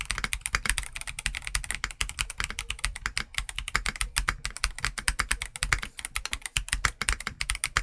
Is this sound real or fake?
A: real